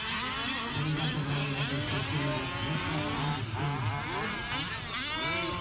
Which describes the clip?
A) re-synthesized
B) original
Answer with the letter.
B